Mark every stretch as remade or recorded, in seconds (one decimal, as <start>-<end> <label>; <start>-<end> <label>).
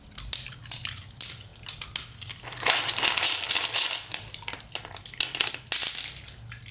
0.0-6.7 recorded